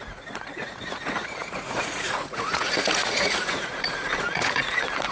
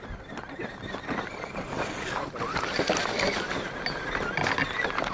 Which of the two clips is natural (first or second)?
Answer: second